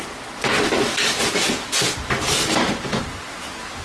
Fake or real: real